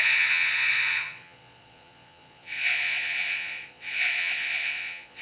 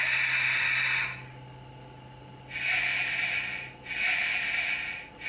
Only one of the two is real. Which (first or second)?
second